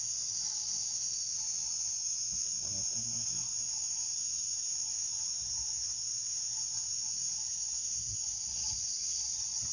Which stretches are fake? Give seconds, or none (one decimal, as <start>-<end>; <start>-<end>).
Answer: 8.6-9.7